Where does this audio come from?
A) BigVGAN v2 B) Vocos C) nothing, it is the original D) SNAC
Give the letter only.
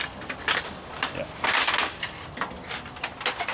A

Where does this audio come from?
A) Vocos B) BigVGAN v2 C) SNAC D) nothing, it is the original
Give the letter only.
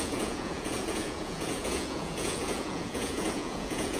A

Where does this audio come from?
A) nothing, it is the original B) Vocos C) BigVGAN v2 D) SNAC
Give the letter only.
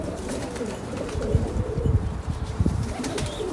C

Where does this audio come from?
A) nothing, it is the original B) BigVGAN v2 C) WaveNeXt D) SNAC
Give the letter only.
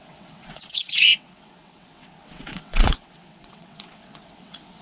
C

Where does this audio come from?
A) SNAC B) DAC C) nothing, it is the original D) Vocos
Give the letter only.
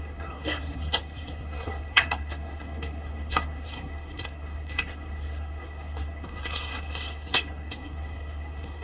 A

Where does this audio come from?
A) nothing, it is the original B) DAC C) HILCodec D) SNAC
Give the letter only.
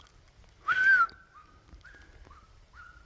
A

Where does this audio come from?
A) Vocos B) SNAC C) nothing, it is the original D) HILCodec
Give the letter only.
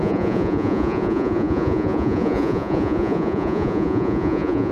A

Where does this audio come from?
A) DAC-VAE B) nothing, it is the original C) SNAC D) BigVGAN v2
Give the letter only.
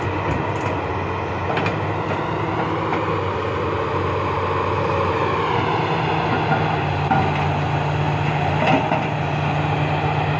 B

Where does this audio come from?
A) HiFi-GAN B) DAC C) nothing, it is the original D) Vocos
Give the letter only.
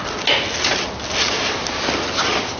C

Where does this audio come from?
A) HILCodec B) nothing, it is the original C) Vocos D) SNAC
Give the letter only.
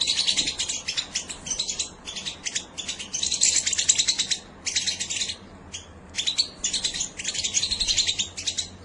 B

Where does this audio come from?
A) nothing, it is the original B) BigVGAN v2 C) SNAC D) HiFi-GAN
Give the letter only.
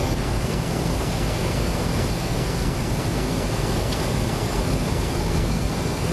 C